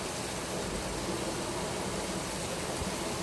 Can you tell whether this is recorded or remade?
recorded